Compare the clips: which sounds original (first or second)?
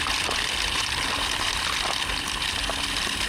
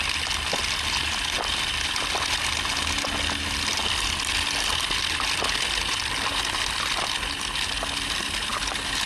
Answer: second